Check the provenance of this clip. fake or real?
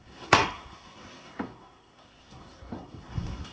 fake